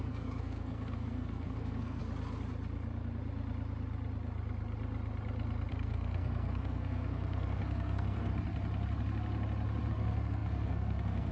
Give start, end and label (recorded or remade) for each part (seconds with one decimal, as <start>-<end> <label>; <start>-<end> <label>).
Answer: 0.0-2.0 remade; 2.0-5.7 recorded; 5.7-8.3 remade; 8.3-9.9 recorded; 9.9-11.3 remade